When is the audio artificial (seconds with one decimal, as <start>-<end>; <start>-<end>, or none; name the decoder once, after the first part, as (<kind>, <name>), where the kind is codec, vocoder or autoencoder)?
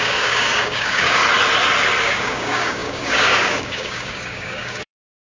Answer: 0.0-1.2 (codec, DAC); 2.0-5.2